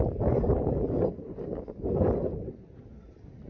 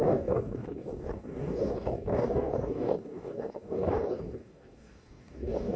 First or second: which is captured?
first